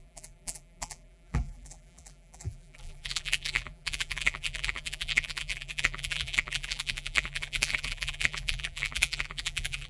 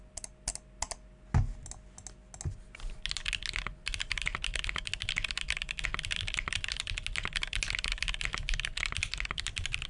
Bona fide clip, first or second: second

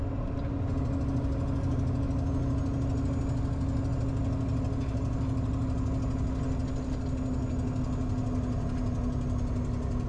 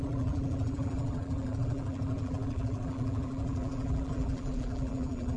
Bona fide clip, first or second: first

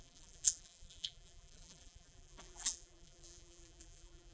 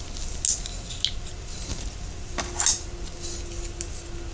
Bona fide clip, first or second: second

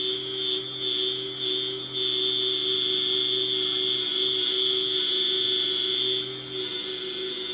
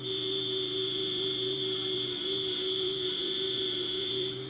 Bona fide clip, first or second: first